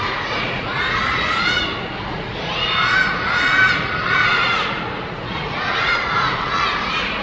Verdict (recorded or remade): remade